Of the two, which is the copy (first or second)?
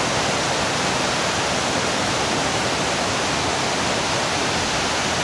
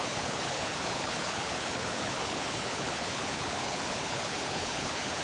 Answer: second